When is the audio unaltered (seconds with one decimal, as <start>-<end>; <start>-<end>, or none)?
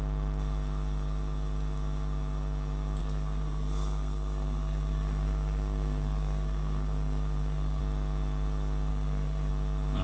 0.0-3.0; 7.8-8.9; 9.5-10.0